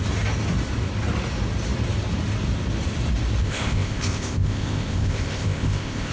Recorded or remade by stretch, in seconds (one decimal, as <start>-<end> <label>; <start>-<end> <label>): 0.0-3.4 recorded; 3.4-6.1 remade